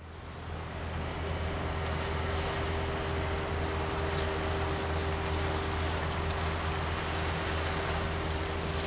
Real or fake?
real